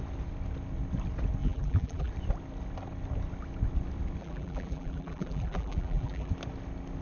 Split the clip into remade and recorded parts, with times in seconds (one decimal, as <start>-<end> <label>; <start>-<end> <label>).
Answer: 0.0-1.4 recorded; 1.4-2.1 remade; 2.1-4.2 recorded; 4.2-6.3 remade; 6.3-7.0 recorded